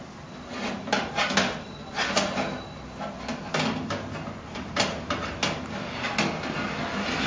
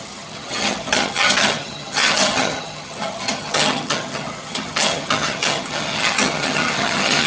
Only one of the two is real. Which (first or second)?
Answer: first